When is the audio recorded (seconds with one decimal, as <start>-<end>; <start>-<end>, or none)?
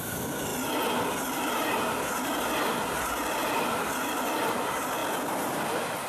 0.0-6.1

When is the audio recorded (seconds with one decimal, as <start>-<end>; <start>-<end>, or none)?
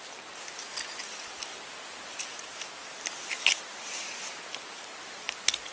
0.0-5.7